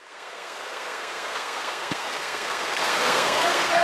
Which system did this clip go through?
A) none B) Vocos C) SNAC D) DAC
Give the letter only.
C